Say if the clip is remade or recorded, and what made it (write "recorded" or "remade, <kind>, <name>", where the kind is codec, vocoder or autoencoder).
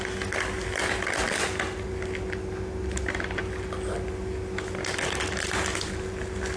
recorded